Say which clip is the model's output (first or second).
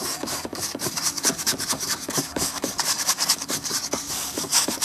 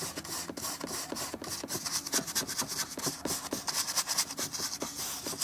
first